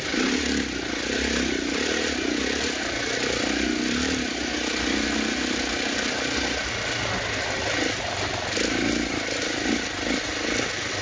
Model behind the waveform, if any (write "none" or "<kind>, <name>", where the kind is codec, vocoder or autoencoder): none